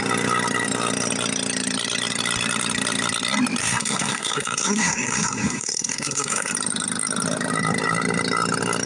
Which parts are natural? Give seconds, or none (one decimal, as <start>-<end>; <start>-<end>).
0.0-3.6; 6.5-8.9